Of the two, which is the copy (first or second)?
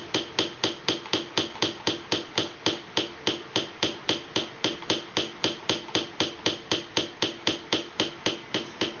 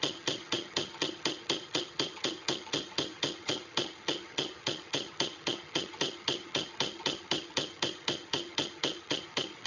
second